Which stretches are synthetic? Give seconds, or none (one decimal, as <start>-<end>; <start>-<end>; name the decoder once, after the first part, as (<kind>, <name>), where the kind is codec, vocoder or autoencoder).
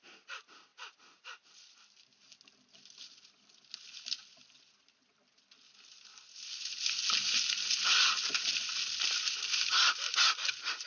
none